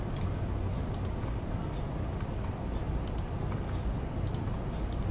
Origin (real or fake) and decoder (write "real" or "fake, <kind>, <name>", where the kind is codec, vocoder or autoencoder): real